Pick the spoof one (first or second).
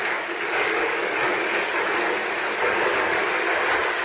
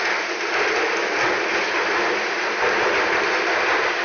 first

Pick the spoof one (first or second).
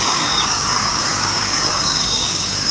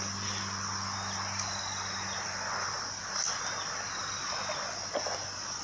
first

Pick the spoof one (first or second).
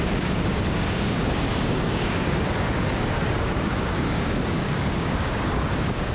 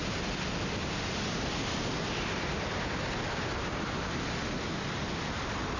first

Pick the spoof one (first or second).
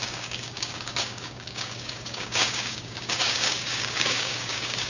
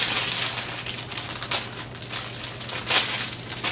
first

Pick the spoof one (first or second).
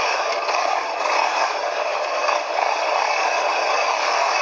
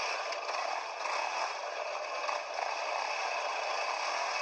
first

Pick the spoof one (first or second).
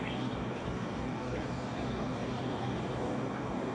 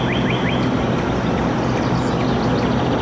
first